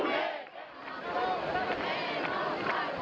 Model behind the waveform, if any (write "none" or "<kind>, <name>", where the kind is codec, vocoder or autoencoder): none